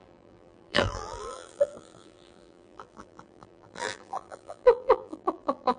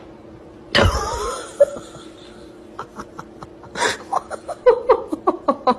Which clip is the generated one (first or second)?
first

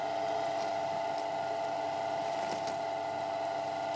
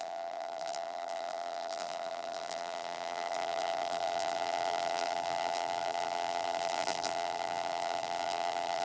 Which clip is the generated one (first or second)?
second